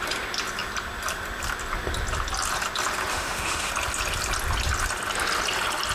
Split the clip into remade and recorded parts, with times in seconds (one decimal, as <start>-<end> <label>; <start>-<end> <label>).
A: 0.0-3.1 recorded; 3.1-3.7 remade; 3.7-5.9 recorded